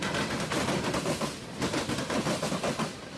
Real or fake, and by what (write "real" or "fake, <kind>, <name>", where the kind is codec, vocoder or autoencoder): real